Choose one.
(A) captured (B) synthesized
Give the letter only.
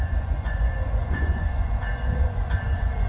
B